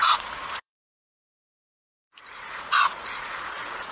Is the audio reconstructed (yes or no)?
yes